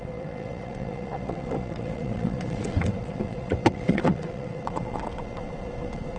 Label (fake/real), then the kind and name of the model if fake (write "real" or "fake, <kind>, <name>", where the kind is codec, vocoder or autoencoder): fake, vocoder, WaveNeXt